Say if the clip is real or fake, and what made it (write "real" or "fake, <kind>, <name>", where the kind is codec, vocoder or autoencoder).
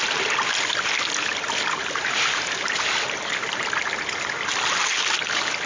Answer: real